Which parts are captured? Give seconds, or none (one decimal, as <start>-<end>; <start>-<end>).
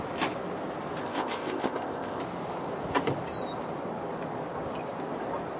0.0-1.0; 2.2-5.6